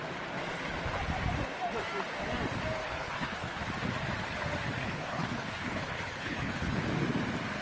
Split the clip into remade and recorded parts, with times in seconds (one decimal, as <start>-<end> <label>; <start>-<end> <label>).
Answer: 0.0-2.8 recorded; 2.8-3.6 remade; 3.6-4.8 recorded; 4.8-6.8 remade; 6.8-7.6 recorded